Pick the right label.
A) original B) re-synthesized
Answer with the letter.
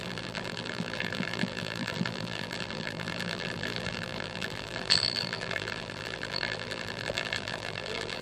B